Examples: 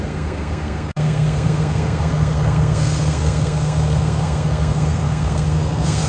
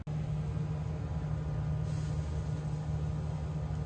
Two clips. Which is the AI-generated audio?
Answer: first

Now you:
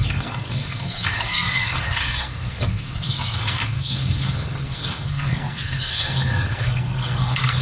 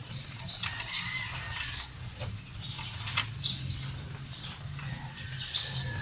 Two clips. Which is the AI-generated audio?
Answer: first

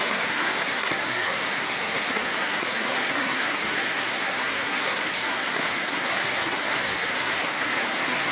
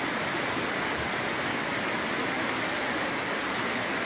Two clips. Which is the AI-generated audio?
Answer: first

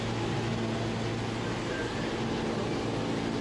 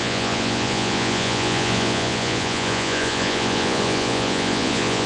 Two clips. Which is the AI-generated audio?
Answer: second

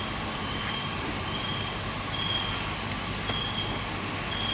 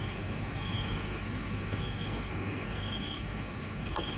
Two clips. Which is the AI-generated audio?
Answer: second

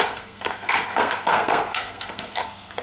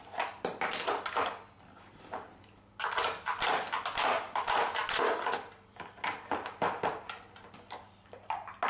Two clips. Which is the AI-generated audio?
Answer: first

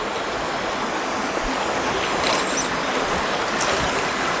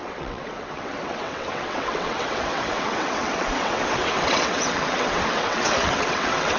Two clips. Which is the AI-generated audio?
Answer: second